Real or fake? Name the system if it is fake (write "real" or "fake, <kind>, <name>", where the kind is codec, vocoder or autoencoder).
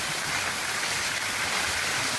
fake, vocoder, BigVGAN v2